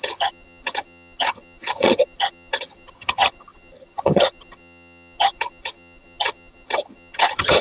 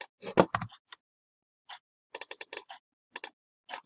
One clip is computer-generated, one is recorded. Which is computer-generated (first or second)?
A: first